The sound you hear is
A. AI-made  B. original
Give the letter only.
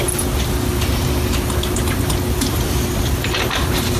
B